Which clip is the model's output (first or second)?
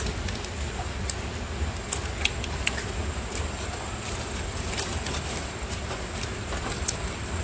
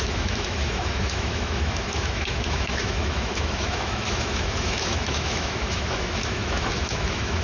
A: second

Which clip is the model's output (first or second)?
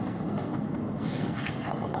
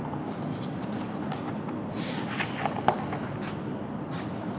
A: first